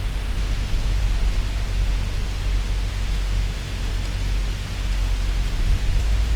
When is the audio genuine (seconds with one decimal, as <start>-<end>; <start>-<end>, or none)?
1.0-2.9; 3.9-6.0